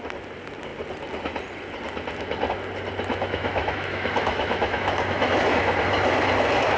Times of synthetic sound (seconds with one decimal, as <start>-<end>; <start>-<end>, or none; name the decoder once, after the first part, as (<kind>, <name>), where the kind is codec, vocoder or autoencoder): 3.1-5.7 (autoencoder, DAC-VAE)